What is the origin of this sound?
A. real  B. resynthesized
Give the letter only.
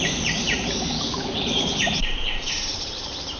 B